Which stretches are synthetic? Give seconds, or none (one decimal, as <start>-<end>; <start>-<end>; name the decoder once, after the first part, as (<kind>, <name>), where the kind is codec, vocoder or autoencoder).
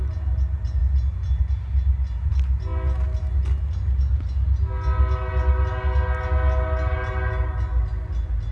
none